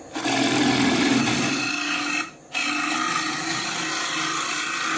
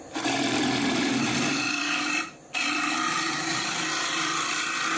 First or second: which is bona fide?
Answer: first